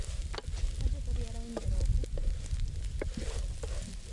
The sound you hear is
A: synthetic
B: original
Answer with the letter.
B